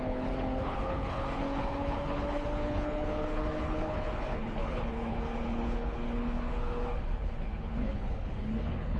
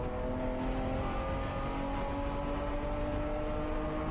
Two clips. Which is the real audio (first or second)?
second